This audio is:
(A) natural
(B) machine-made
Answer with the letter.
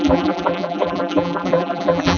B